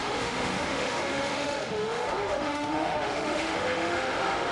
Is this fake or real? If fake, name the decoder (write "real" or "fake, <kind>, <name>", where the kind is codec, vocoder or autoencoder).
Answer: fake, autoencoder, DAC-VAE